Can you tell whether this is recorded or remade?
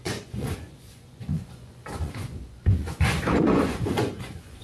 remade